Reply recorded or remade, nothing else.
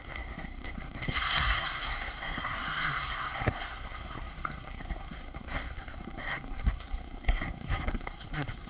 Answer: remade